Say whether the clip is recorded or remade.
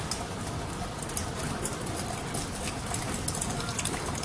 recorded